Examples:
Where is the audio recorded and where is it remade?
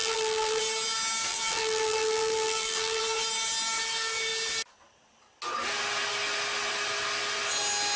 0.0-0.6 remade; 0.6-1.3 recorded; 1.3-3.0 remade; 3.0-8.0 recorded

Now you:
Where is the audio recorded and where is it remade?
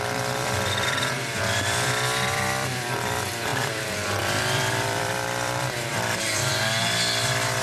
0.0-6.5 remade; 6.5-7.6 recorded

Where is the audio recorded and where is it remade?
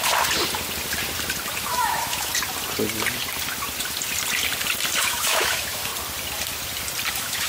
0.0-1.6 recorded; 1.6-2.3 remade; 2.3-5.0 recorded; 5.0-5.9 remade; 5.9-7.1 recorded; 7.1-7.5 remade